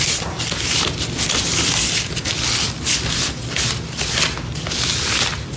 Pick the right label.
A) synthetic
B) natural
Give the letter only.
B